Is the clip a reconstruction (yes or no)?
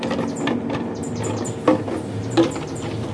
no